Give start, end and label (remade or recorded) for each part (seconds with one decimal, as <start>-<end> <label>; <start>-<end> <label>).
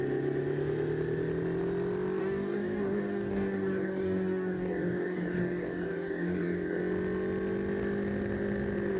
0.0-2.2 recorded; 2.2-6.8 remade; 6.8-9.0 recorded